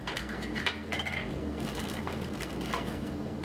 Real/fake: fake